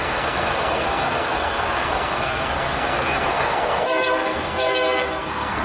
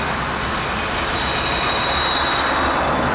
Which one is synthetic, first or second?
first